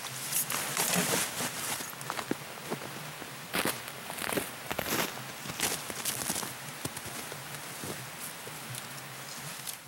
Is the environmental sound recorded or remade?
recorded